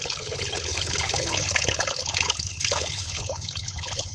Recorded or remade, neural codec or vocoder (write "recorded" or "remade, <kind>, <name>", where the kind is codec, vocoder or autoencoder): remade, codec, HILCodec